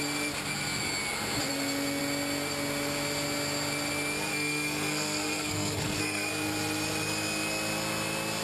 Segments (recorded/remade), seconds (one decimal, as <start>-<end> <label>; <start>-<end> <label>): 0.0-4.3 recorded; 4.3-6.3 remade; 6.3-8.4 recorded